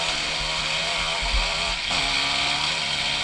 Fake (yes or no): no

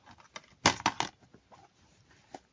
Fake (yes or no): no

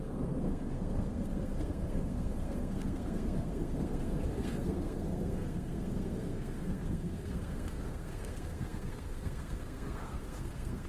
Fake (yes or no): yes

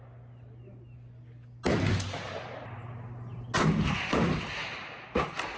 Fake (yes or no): no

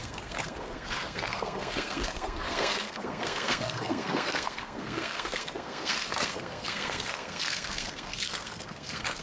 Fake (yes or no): yes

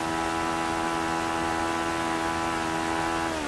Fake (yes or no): no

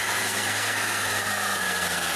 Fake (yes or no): yes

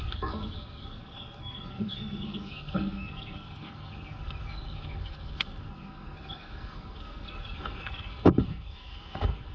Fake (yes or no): yes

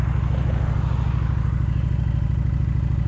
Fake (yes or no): no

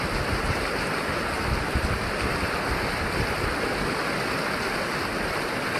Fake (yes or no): no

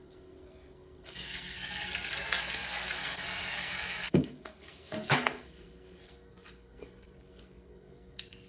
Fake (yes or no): yes